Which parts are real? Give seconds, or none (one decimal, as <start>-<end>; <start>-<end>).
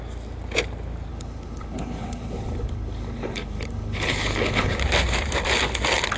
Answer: 0.0-1.1; 4.8-6.2